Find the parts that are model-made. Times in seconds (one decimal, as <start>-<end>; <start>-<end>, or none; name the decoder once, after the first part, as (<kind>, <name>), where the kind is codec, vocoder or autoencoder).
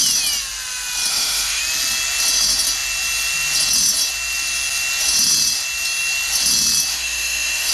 1.1-1.6 (autoencoder, DAC-VAE); 6.9-7.7